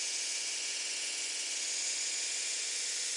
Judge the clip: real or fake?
fake